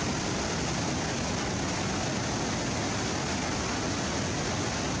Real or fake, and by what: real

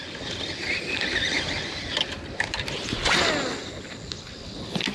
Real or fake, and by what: real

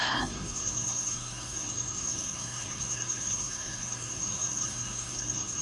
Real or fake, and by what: fake, codec, SNAC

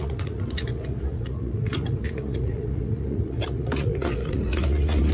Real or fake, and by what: fake, vocoder, Vocos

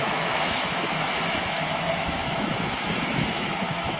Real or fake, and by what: fake, autoencoder, DAC-VAE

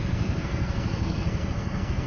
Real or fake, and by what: fake, codec, SNAC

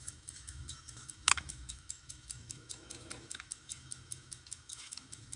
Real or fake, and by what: fake, autoencoder, DAC-VAE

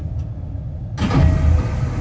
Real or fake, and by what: real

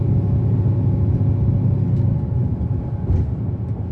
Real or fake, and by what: real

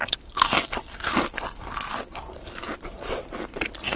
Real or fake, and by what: real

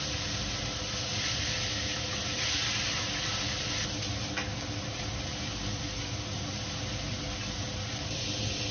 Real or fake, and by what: real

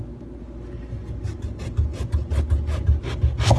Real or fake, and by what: real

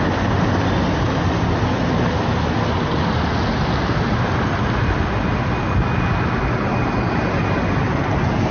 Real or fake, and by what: real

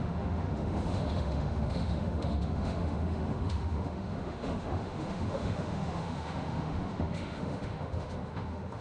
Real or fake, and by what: fake, autoencoder, DAC-VAE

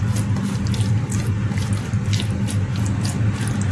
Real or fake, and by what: real